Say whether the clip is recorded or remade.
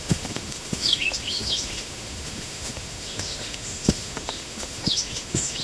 remade